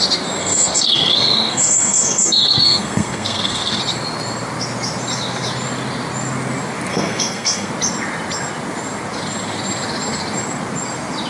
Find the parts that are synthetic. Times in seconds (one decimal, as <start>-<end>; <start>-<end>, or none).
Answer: 0.4-3.8; 6.9-7.7